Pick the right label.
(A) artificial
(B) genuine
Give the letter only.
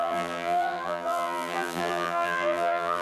A